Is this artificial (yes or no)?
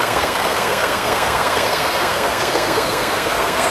yes